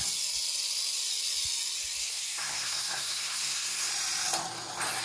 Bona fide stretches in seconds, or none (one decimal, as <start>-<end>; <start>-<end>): 0.0-2.0; 3.9-5.0